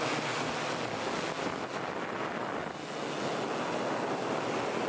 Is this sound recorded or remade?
recorded